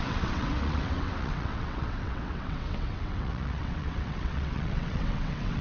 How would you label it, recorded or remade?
remade